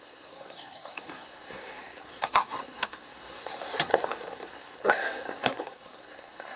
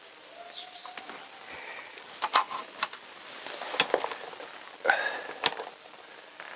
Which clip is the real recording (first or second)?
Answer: second